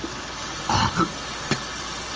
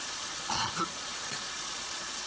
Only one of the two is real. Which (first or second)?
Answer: first